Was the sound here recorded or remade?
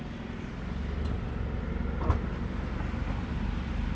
recorded